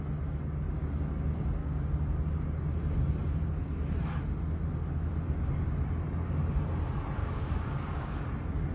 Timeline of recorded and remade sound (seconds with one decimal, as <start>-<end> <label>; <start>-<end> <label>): 0.0-1.6 recorded; 1.6-2.2 remade; 2.2-7.2 recorded; 7.2-8.2 remade; 8.2-8.7 recorded